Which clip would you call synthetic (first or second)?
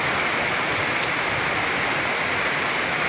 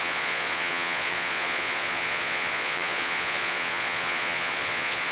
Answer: second